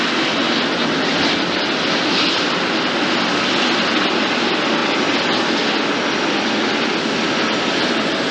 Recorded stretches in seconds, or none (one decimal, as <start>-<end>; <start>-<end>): 0.0-8.3